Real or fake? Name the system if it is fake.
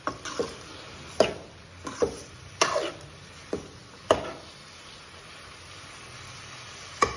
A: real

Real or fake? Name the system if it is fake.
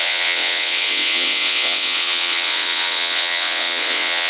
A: fake, vocoder, WaveNeXt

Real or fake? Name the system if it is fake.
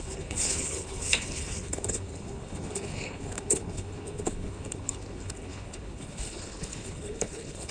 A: fake, codec, HILCodec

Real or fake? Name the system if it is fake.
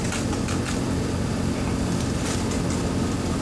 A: real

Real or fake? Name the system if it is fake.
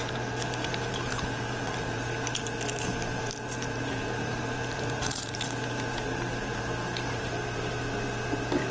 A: fake, vocoder, BigVGAN v2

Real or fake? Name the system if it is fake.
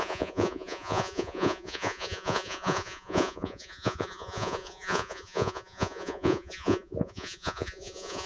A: fake, vocoder, Vocos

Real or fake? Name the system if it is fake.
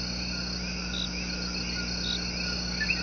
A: real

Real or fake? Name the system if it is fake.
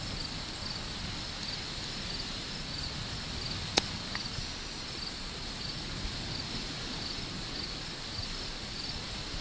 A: real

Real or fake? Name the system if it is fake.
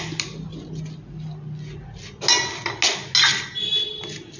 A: real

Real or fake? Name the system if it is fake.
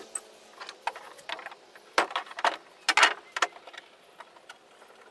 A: real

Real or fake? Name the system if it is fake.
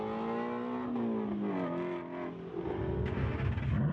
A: real